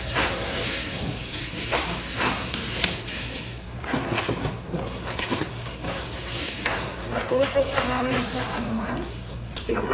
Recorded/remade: remade